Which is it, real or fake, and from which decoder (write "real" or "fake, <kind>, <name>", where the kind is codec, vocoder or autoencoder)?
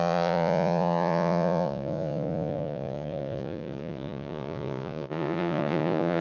fake, vocoder, Vocos